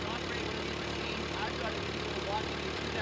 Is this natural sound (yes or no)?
no